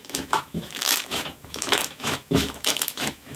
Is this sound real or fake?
fake